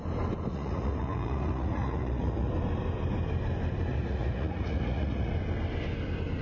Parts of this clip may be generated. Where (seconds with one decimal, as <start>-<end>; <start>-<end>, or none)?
0.5-2.5; 3.9-5.3